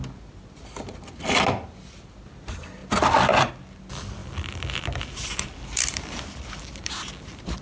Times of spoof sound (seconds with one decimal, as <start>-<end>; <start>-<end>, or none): 2.8-3.5; 4.2-6.9